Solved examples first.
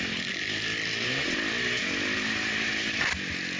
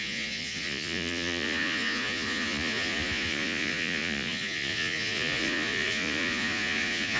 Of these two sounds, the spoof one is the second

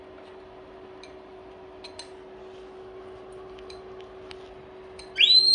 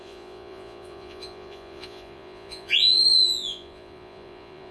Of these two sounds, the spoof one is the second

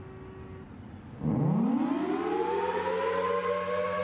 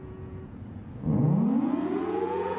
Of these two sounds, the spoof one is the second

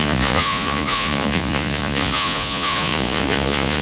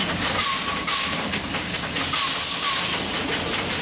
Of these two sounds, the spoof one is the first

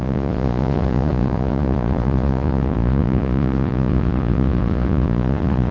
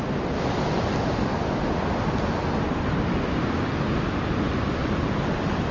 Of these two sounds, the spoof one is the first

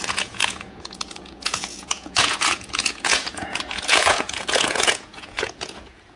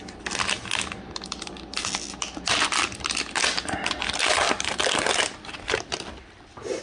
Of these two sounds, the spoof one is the first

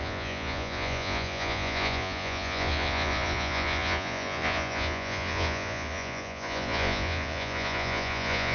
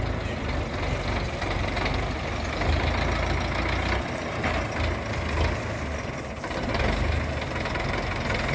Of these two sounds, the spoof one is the first